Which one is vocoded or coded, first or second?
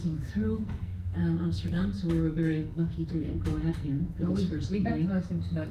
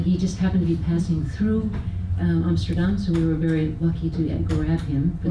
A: first